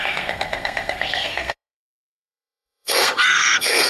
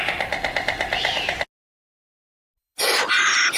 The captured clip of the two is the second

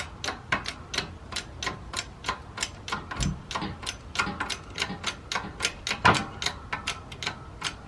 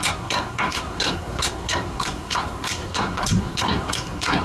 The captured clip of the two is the first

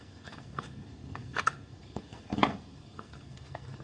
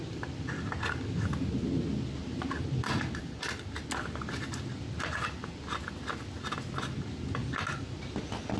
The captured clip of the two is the second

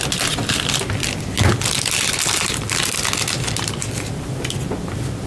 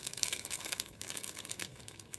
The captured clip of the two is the first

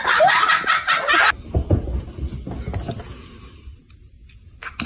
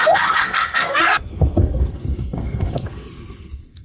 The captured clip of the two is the first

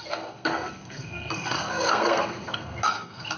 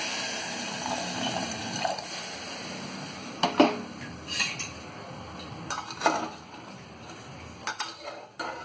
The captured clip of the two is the second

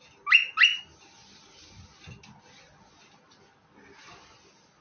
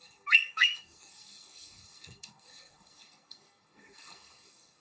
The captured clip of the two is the first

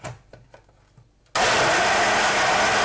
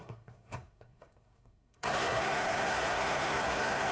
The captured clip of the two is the first